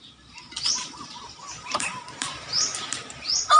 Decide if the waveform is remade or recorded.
remade